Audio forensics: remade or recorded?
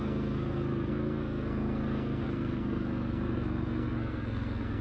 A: remade